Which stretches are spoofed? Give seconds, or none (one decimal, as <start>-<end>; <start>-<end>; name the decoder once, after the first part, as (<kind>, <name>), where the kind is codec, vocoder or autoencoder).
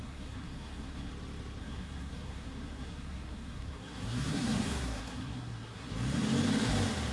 0.0-1.1 (codec, SNAC); 1.6-5.9